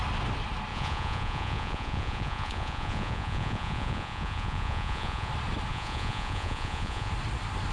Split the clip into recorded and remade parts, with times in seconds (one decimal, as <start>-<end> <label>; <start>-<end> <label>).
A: 0.0-0.7 recorded; 0.7-5.3 remade; 5.3-5.7 recorded; 5.7-7.1 remade; 7.1-7.7 recorded